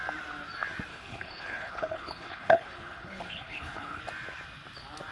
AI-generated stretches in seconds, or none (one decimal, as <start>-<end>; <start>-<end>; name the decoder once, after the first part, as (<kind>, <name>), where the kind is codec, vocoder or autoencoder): 0.9-4.0 (codec, HILCodec)